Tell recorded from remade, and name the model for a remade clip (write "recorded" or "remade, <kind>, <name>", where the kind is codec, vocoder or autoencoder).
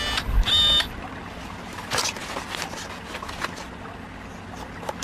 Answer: recorded